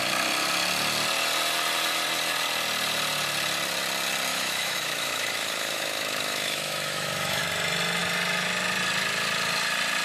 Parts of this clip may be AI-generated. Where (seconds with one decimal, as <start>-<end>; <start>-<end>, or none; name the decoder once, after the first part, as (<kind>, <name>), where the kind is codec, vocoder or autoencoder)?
4.3-7.4 (autoencoder, DAC-VAE)